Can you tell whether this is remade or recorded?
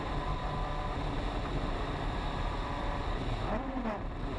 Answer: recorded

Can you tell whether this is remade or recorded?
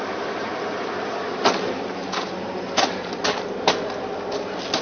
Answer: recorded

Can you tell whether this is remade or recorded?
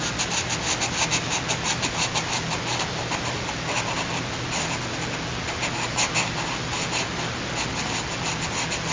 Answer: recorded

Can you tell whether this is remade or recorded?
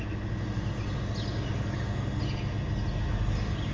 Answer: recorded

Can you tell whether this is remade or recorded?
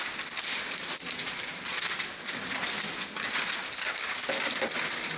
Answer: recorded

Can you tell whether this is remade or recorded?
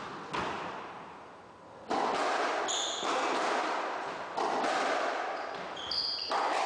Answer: recorded